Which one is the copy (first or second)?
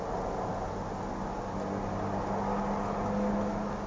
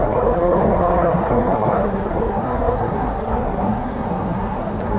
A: second